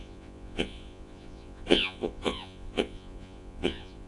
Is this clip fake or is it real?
fake